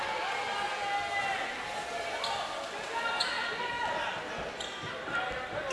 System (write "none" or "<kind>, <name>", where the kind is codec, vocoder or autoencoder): none